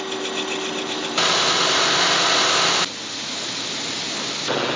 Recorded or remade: recorded